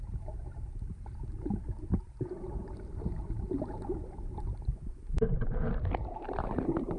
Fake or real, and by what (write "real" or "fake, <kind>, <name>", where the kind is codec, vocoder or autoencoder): fake, vocoder, BigVGAN v2